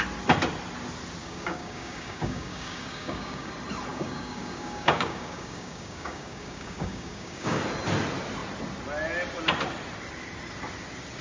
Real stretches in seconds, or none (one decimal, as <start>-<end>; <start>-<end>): 0.0-1.2; 3.5-3.9; 7.6-11.2